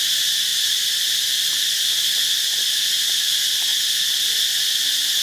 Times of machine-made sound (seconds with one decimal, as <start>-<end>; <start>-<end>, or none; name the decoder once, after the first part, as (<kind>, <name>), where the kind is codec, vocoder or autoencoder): none